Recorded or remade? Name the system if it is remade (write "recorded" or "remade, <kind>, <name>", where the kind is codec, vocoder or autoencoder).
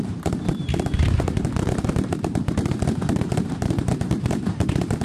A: remade, vocoder, BigVGAN v2